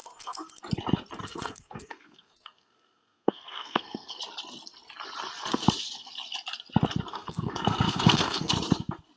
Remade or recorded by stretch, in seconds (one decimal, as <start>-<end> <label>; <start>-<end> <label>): 0.0-0.6 remade; 0.6-1.2 recorded; 1.2-4.2 remade; 4.2-7.1 recorded; 7.1-8.5 remade; 8.5-9.2 recorded